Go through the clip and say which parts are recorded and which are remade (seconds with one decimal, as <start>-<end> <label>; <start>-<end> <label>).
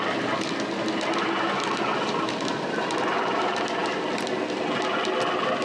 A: 0.0-5.6 recorded